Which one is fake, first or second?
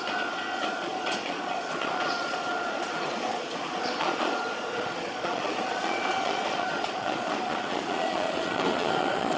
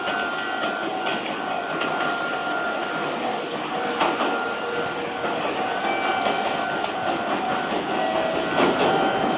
first